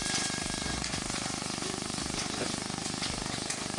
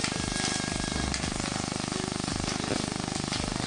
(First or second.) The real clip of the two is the second